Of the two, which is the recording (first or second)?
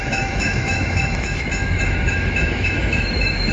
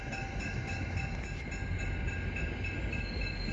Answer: second